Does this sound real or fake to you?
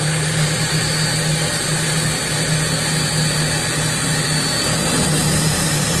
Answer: real